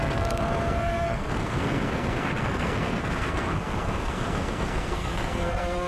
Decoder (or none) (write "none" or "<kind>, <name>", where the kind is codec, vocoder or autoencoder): codec, SNAC